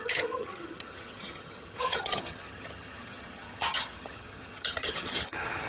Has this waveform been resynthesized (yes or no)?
yes